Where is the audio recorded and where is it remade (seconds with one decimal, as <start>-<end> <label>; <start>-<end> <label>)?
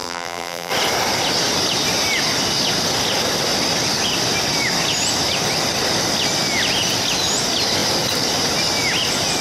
0.0-0.7 remade; 0.7-9.4 recorded